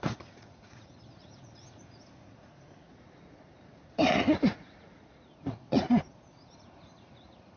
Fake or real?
fake